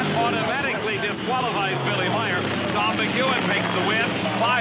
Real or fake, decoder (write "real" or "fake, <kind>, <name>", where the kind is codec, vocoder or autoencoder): real